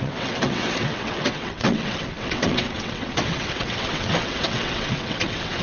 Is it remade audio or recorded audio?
remade